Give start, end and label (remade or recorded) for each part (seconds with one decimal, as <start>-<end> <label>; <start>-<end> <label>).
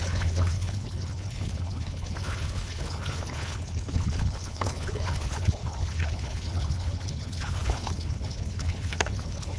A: 0.0-9.6 remade